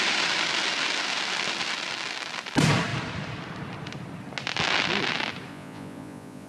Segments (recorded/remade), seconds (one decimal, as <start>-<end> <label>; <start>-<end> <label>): 0.0-5.5 recorded; 5.5-6.5 remade